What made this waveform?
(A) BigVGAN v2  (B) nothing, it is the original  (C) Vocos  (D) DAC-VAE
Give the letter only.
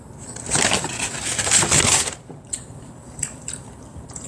B